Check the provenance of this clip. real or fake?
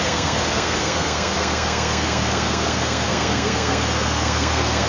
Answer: fake